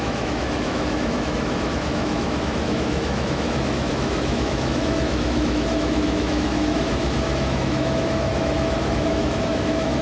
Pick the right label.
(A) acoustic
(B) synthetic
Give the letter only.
B